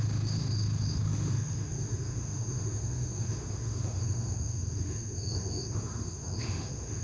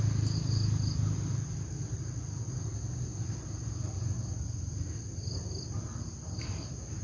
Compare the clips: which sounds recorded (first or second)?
second